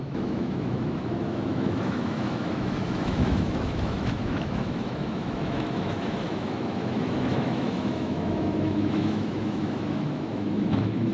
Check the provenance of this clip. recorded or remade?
remade